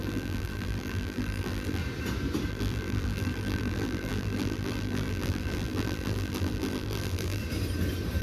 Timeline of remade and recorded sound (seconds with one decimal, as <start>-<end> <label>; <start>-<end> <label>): 0.0-1.8 remade; 1.8-2.5 recorded; 2.5-7.4 remade; 7.4-8.2 recorded